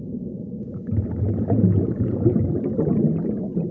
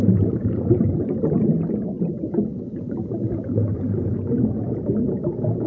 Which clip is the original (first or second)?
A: first